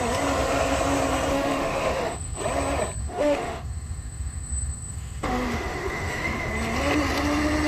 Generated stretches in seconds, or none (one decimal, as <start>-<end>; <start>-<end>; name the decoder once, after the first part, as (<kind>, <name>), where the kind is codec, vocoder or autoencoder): 1.3-2.4 (autoencoder, DAC-VAE); 3.0-6.5